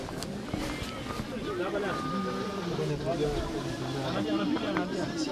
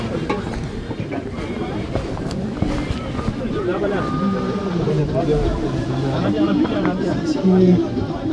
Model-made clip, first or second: second